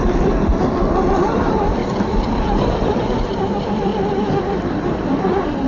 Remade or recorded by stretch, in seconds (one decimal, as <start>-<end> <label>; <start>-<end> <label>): 0.0-0.5 remade; 0.5-1.1 recorded; 1.1-3.9 remade; 3.9-4.4 recorded; 4.4-5.7 remade